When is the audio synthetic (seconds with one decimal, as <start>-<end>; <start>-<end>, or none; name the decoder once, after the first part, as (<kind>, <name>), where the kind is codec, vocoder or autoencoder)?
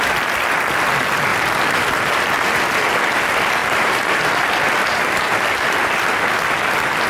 3.6-4.3 (vocoder, BigVGAN v2)